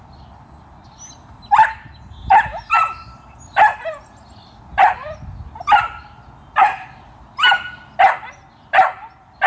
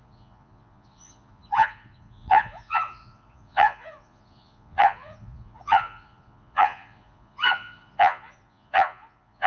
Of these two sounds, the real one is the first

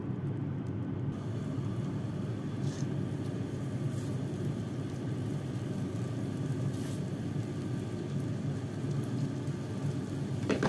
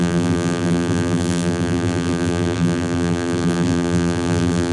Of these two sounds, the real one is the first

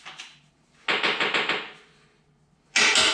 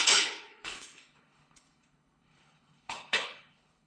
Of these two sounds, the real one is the first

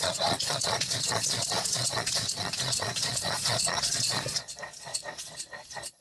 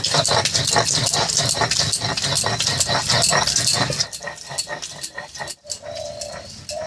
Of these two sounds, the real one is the second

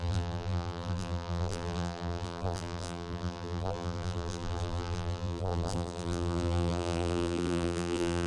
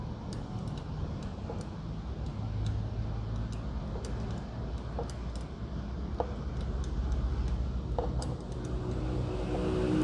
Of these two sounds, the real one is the second